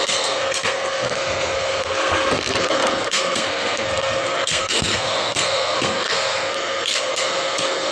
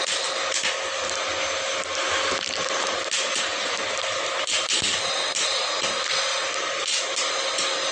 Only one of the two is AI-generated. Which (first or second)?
first